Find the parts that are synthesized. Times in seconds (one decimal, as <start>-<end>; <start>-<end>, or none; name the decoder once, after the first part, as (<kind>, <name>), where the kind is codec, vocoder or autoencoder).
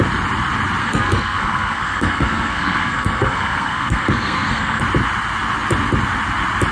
0.8-4.8 (codec, SNAC)